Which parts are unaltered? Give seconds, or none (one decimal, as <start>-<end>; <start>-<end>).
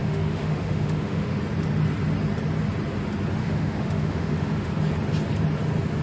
1.4-3.4; 4.7-6.0